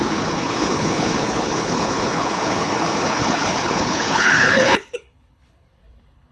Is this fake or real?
fake